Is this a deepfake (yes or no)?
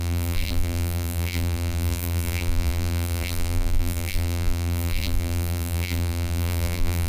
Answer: yes